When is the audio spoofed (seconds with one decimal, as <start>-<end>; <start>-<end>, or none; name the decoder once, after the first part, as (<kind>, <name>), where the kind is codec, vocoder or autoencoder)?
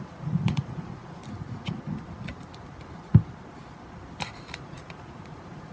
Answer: 0.0-1.2 (vocoder, Vocos); 4.6-5.7